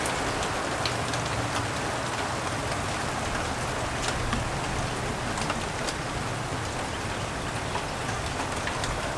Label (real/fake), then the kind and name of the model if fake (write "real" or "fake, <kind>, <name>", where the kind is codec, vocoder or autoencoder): real